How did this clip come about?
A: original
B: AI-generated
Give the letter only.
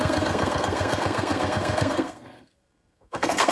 B